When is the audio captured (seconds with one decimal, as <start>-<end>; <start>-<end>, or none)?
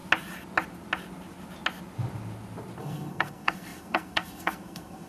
0.0-2.8